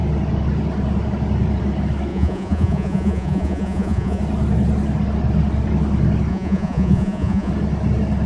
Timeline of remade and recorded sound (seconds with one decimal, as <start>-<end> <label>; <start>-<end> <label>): 0.0-2.1 recorded; 2.1-4.2 remade; 4.2-6.3 recorded; 6.3-7.5 remade; 7.5-8.3 recorded